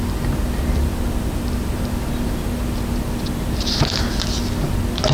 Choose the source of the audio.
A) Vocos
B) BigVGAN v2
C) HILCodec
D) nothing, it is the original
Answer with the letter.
D